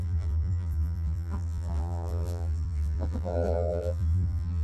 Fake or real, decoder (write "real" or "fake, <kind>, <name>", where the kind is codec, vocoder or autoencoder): fake, vocoder, BigVGAN v2